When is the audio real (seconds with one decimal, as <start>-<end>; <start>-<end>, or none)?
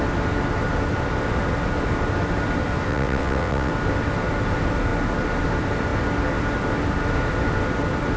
0.0-2.9; 3.7-8.2